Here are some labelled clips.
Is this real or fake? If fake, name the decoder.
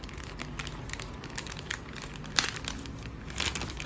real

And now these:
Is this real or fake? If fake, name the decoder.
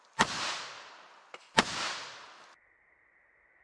real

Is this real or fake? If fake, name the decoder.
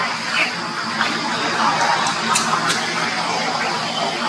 real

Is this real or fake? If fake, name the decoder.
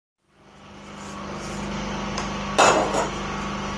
real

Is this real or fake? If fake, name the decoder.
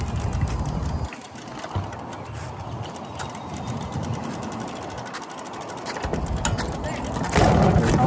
real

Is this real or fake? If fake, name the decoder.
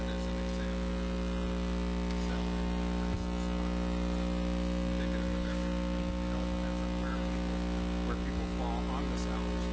real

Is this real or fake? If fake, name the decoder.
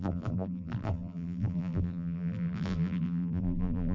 fake, vocoder, BigVGAN v2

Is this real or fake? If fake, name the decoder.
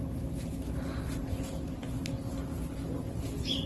real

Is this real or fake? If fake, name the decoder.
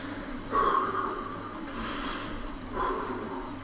real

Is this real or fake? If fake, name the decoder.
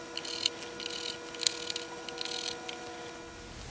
real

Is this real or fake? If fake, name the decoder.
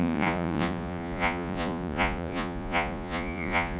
fake, vocoder, Vocos